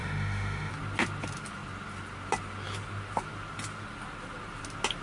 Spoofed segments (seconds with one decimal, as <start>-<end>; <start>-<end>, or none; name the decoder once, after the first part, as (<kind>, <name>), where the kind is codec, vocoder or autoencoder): 0.0-0.7 (autoencoder, DAC-VAE)